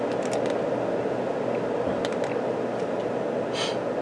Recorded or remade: recorded